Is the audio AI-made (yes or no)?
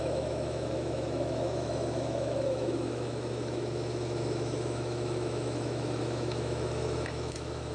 yes